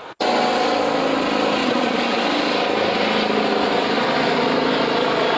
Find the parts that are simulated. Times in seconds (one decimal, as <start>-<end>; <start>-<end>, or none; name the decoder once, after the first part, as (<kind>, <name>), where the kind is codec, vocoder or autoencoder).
1.6-2.2 (vocoder, Vocos)